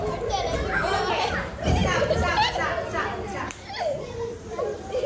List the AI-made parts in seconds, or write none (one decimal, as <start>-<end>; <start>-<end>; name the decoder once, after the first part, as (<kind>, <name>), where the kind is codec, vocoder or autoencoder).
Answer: 1.8-4.6 (vocoder, BigVGAN v2)